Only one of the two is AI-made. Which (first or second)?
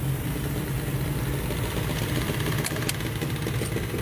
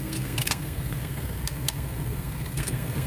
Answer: second